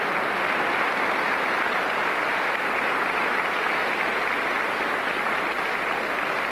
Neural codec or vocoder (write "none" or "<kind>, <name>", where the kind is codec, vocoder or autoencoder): none